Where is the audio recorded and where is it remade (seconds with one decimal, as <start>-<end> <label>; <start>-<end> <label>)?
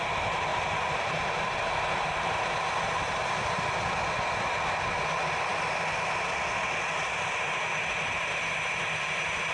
0.0-0.5 recorded; 0.5-3.7 remade; 3.7-9.5 recorded